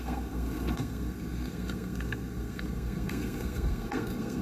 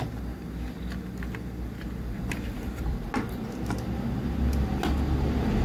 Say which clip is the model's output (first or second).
first